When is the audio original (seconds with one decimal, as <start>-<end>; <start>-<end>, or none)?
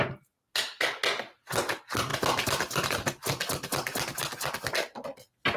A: 0.0-5.6